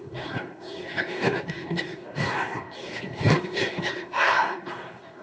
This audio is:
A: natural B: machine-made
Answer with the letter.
B